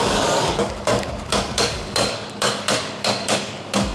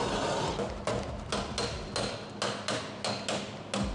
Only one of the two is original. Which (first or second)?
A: second